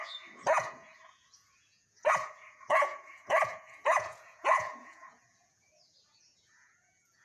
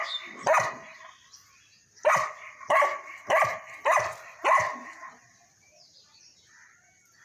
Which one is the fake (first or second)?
first